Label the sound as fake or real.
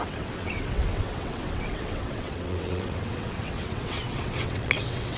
fake